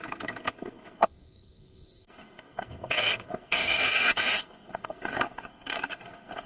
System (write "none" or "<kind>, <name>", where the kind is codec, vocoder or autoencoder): codec, SNAC